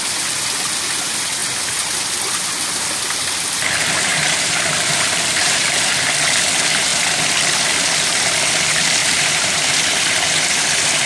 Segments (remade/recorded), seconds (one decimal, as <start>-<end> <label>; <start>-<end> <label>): 0.0-4.1 recorded; 4.1-5.9 remade; 5.9-9.0 recorded; 9.0-9.7 remade; 9.7-11.1 recorded